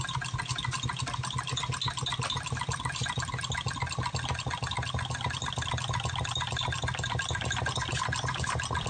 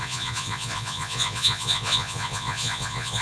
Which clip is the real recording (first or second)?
first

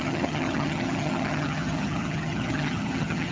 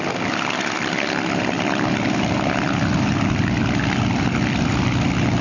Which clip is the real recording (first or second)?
second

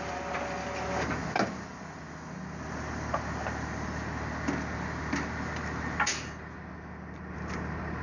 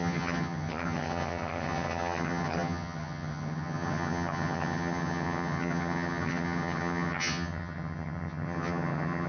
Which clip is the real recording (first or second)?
first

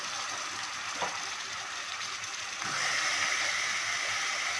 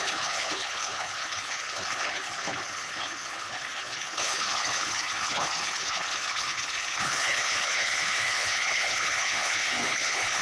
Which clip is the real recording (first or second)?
first